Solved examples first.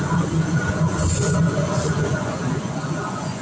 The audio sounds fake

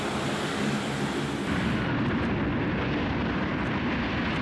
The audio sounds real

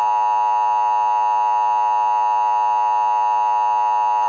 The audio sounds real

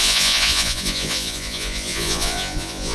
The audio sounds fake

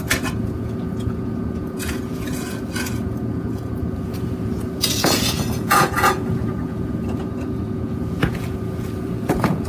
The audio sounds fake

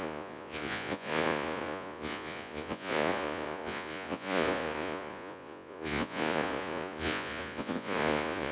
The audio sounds fake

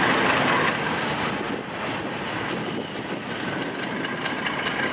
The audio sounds real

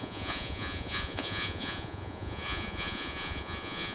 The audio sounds fake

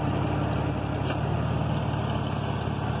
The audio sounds real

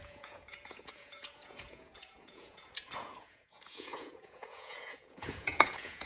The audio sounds fake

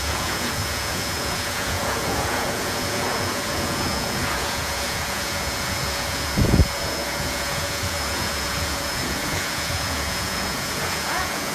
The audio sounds fake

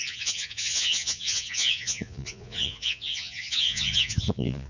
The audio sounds fake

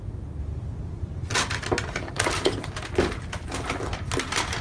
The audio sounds real